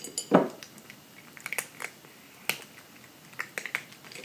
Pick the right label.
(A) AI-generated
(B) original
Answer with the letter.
B